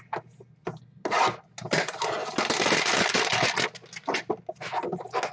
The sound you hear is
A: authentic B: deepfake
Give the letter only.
A